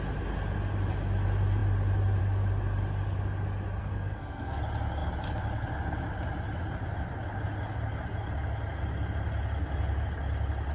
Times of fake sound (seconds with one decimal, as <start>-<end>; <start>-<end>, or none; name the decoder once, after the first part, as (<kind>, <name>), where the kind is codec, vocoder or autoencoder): 3.8-4.6 (codec, SNAC)